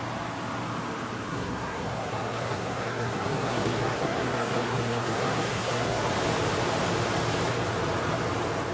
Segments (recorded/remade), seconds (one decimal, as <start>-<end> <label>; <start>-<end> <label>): 0.0-1.3 recorded; 1.3-6.1 remade; 6.1-8.7 recorded